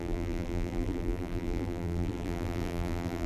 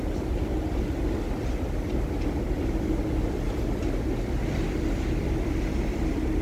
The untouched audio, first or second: second